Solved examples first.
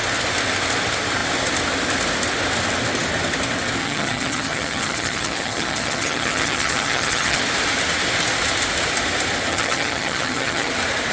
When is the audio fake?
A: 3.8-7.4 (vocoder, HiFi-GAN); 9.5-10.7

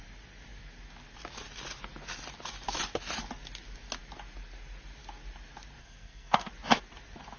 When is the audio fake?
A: 5.8-6.5 (codec, SNAC)

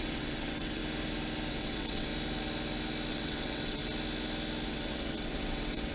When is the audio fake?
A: 0.0-0.8 (vocoder, WaveNeXt); 1.5-2.1; 3.1-3.8; 4.7-5.9